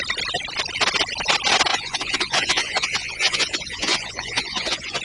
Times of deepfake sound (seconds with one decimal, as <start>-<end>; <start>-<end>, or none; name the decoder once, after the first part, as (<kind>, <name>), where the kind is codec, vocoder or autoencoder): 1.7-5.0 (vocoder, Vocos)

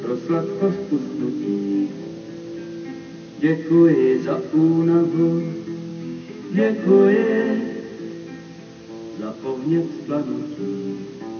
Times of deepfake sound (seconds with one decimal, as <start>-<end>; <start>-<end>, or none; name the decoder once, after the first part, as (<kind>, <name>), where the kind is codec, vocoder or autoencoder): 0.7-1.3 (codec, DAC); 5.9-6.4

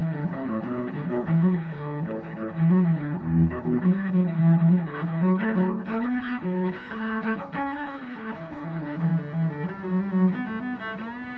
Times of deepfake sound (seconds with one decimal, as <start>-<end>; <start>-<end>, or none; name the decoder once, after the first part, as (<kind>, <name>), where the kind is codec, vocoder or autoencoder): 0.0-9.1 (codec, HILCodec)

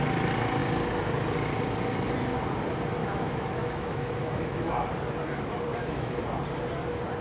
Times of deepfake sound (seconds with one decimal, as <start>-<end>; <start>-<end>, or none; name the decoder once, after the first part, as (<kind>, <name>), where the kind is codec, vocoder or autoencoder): 3.0-4.7 (autoencoder, DAC-VAE); 5.7-6.2